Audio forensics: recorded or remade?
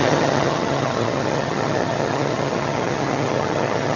remade